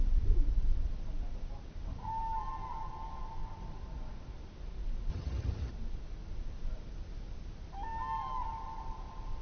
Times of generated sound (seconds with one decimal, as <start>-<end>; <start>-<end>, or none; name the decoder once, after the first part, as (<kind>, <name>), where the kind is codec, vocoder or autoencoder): 5.1-5.7 (vocoder, HiFi-GAN)